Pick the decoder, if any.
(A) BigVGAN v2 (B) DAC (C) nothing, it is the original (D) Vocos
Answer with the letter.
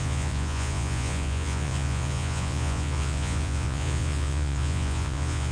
D